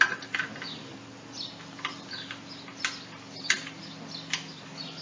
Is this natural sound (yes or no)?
yes